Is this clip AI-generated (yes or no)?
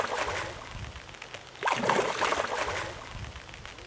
no